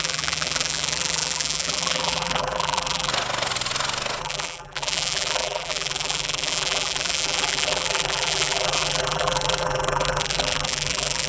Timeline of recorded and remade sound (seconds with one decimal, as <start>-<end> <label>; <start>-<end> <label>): 0.0-3.1 remade; 3.1-4.2 recorded; 4.2-11.3 remade